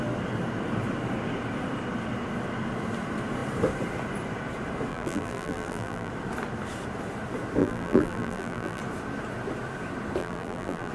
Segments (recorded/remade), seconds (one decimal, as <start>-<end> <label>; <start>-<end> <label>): 0.0-4.9 recorded; 4.9-6.1 remade; 6.1-7.6 recorded; 7.6-8.8 remade; 8.8-10.2 recorded; 10.2-10.9 remade